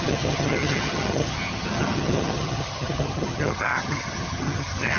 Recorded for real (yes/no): no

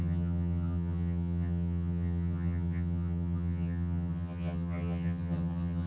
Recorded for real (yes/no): no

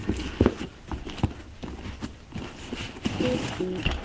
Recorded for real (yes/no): yes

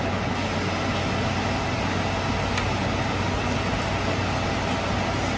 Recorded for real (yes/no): yes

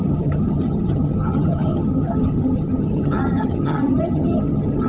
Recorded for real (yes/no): no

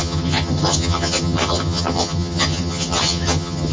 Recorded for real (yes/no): no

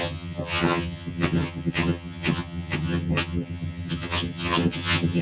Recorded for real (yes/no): no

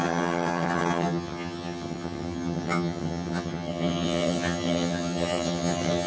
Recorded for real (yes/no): no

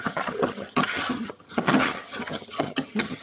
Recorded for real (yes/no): no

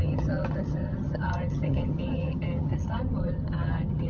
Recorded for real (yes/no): no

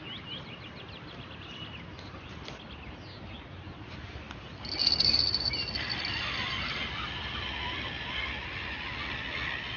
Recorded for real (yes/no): yes